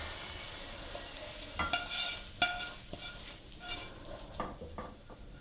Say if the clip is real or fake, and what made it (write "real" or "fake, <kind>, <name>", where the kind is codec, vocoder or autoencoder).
real